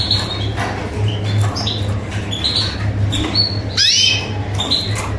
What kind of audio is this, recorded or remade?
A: recorded